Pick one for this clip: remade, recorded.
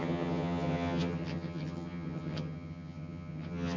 remade